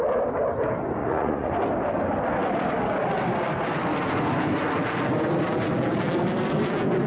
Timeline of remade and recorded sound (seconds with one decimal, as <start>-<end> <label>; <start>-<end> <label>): 0.0-1.0 recorded; 1.0-1.5 remade; 1.5-7.1 recorded